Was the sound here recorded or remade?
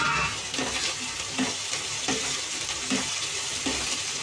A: recorded